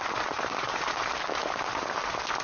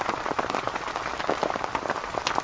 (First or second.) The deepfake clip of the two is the second